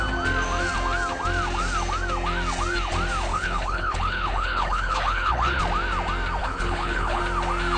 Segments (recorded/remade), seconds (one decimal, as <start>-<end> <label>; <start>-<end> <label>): 0.0-3.3 recorded; 3.3-5.6 remade; 5.6-6.4 recorded; 6.4-7.2 remade; 7.2-7.8 recorded